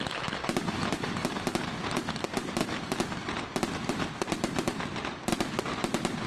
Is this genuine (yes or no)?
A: yes